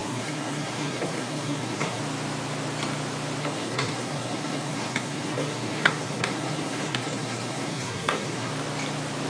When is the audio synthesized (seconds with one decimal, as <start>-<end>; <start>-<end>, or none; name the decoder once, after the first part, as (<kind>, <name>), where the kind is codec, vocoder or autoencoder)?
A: 0.0-2.0 (codec, SNAC); 3.4-8.5